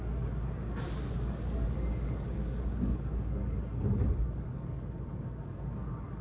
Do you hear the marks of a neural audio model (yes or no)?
yes